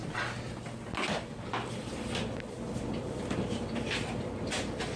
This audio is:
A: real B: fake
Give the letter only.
A